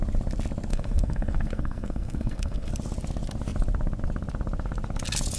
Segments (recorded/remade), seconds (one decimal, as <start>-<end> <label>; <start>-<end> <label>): 0.0-0.7 recorded; 0.7-2.7 remade; 2.7-5.4 recorded